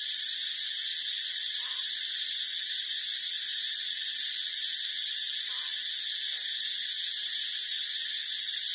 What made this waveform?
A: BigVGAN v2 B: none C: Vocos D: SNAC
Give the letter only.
B